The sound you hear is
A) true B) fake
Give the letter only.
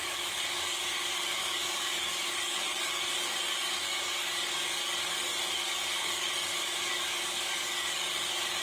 B